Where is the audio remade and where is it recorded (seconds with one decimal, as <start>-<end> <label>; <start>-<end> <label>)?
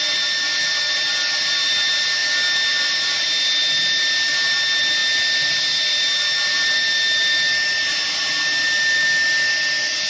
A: 0.0-10.1 recorded